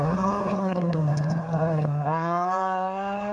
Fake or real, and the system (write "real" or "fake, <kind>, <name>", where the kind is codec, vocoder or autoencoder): fake, codec, SNAC